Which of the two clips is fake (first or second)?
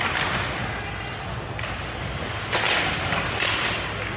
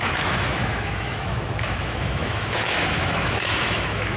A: second